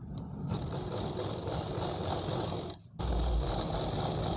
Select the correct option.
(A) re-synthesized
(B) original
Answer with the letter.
B